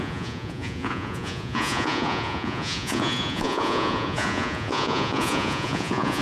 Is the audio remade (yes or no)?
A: yes